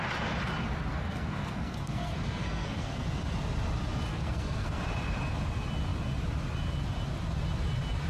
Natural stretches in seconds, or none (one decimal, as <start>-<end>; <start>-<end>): 0.0-0.9; 3.2-4.1; 4.8-8.1